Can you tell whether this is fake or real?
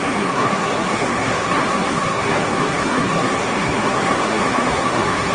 fake